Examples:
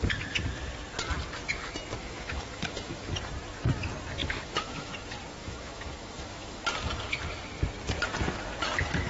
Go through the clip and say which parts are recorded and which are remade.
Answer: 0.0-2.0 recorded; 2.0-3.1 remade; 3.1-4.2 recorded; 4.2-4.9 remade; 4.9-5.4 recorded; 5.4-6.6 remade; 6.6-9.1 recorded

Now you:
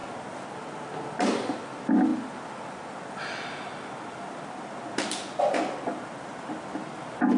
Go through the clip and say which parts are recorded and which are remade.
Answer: 0.0-7.4 recorded

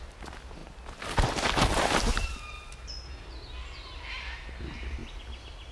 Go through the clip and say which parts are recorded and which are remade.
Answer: 0.0-5.7 recorded

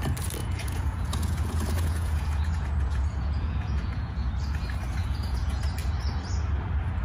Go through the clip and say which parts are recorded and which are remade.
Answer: 0.0-0.4 recorded; 0.4-4.3 remade; 4.3-5.0 recorded; 5.0-5.6 remade; 5.6-7.0 recorded

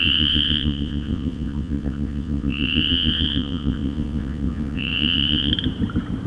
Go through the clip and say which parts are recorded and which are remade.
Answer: 0.0-5.5 remade; 5.5-6.3 recorded

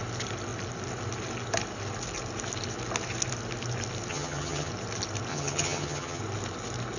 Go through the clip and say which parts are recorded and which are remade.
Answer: 0.0-4.1 recorded; 4.1-4.7 remade; 4.7-5.3 recorded; 5.3-6.2 remade; 6.2-7.0 recorded

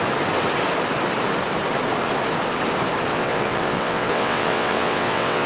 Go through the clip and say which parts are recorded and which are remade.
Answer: 0.0-3.1 recorded; 3.1-5.5 remade

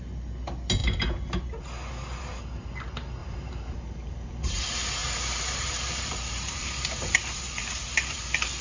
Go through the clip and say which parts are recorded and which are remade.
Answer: 0.0-3.2 recorded; 3.2-4.5 remade; 4.5-5.0 recorded; 5.0-8.2 remade; 8.2-8.6 recorded